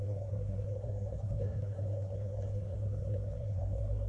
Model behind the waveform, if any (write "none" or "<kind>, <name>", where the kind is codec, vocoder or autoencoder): codec, SNAC